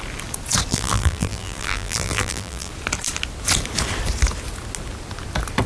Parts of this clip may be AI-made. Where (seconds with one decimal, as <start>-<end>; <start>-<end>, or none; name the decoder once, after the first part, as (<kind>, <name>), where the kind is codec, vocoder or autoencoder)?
0.7-2.7 (vocoder, BigVGAN v2)